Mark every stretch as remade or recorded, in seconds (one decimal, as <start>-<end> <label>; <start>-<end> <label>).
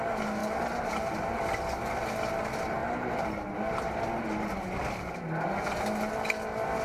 0.0-6.8 recorded